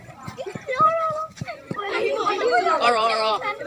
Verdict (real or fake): fake